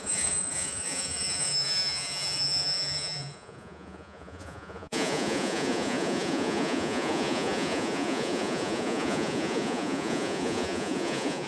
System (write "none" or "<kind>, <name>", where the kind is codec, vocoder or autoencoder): vocoder, Vocos